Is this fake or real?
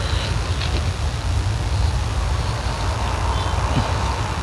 real